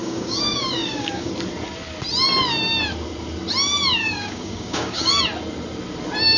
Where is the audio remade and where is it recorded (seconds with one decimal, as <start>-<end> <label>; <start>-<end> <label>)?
0.0-1.3 remade; 1.3-4.0 recorded; 4.0-5.2 remade; 5.2-6.4 recorded